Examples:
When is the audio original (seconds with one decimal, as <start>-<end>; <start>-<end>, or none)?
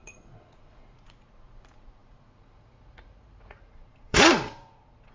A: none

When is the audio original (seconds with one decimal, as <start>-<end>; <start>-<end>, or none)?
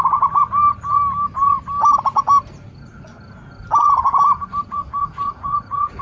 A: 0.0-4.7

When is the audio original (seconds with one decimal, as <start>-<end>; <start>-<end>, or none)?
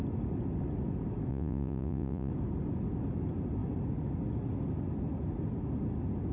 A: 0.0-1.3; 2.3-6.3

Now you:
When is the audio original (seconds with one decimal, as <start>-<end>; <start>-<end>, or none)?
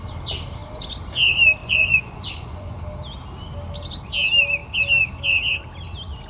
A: 0.0-1.6; 2.8-6.3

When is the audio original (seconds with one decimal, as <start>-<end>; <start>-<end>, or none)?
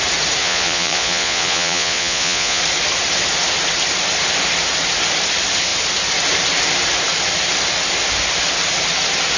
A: 0.0-0.4; 2.6-9.4